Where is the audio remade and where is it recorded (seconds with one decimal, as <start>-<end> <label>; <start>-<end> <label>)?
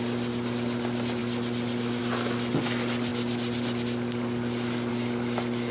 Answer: 0.0-5.7 recorded